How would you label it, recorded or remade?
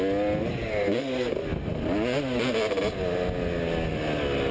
recorded